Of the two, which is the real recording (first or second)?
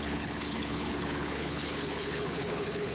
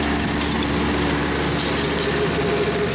second